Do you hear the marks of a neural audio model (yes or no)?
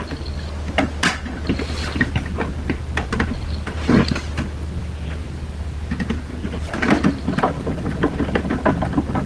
no